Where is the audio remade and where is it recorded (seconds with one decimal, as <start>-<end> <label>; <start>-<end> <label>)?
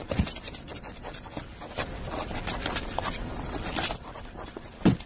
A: 0.0-0.8 remade; 0.8-5.1 recorded